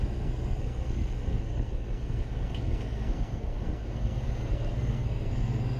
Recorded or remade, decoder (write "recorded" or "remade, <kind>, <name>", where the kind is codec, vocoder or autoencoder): remade, codec, SNAC